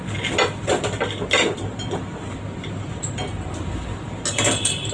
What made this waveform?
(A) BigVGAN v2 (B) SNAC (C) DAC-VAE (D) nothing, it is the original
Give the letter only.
D